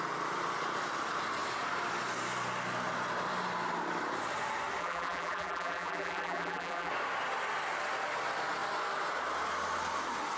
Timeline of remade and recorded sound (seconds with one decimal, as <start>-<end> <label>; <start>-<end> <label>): 0.0-4.8 recorded; 4.8-6.9 remade; 6.9-10.4 recorded